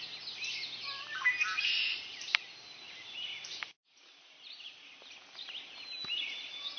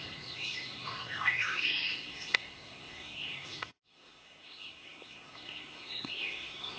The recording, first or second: first